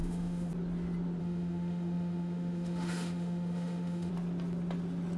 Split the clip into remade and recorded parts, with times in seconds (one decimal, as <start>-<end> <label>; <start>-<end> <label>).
0.0-0.5 remade; 0.5-1.2 recorded; 1.2-4.1 remade; 4.1-5.2 recorded